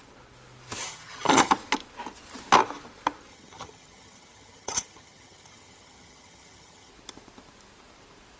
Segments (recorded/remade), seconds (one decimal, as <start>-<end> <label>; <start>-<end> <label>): 0.0-0.8 recorded; 0.8-1.5 remade; 1.5-3.3 recorded; 3.3-6.9 remade; 6.9-8.4 recorded